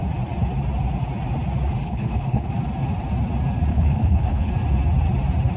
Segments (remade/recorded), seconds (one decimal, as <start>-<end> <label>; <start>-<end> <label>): 0.0-1.8 recorded; 1.8-2.5 remade; 2.5-3.7 recorded; 3.7-4.5 remade; 4.5-5.6 recorded